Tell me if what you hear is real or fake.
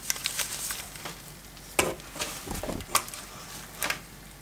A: real